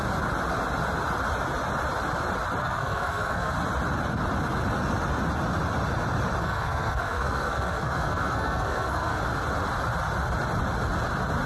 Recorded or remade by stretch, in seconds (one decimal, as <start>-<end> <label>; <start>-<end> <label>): 0.0-2.6 recorded; 2.6-3.5 remade; 3.5-6.4 recorded; 6.4-9.2 remade; 9.2-11.5 recorded